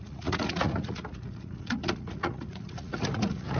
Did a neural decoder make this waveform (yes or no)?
yes